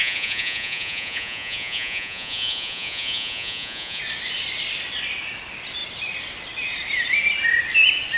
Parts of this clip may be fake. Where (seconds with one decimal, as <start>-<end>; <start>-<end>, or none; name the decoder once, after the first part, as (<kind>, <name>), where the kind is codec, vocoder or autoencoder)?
0.0-4.0 (vocoder, Vocos)